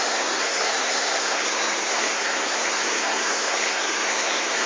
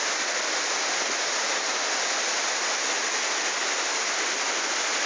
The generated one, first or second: first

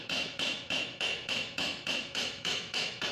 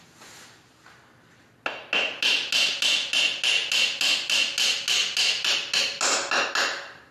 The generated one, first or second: first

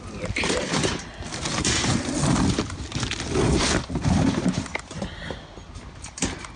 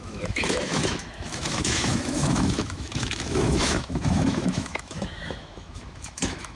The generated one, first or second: second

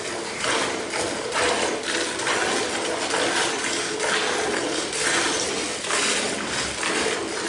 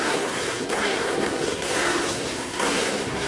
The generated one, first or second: second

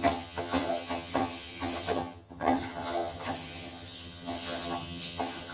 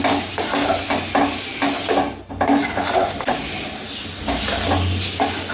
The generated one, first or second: first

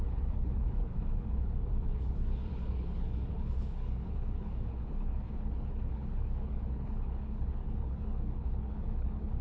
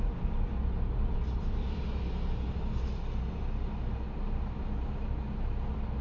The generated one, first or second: first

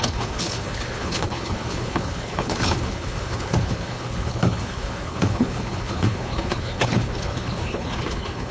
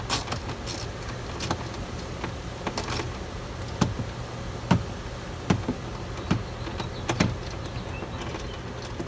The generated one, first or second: first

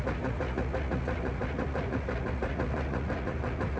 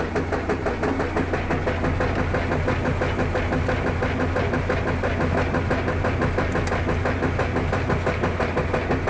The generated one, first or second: first